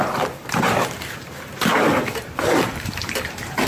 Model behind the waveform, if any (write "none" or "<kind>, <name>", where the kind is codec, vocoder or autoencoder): vocoder, BigVGAN v2